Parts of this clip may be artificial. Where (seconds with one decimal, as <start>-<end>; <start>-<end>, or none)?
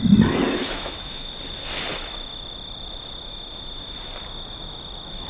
0.6-1.3